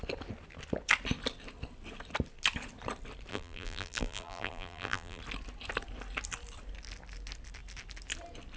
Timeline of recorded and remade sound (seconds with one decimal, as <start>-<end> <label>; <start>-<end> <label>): 0.0-3.3 recorded; 3.3-5.2 remade; 5.2-8.6 recorded